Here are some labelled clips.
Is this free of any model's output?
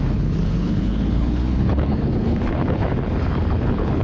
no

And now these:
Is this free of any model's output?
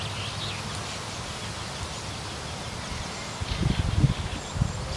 yes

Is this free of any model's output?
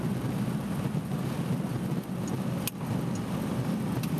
yes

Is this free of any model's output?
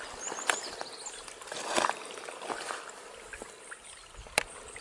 yes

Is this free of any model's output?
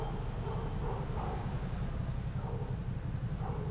yes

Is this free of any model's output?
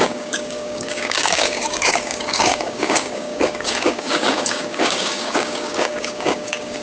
no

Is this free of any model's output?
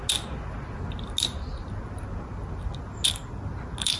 yes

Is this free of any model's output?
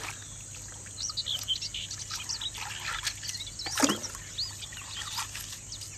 yes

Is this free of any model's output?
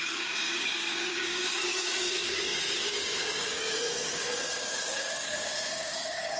no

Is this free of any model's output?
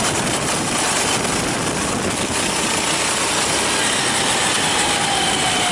yes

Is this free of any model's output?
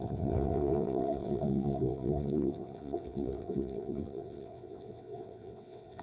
no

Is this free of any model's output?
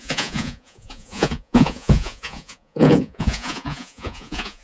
no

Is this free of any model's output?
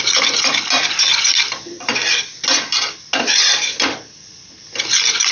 yes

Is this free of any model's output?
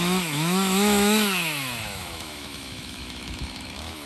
no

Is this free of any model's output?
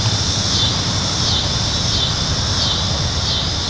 yes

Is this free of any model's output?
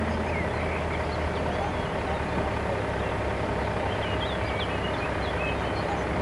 yes